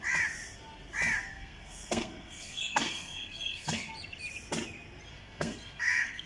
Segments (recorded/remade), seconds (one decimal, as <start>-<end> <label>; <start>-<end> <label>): 0.0-1.3 recorded; 1.3-3.9 remade; 3.9-5.1 recorded; 5.1-6.3 remade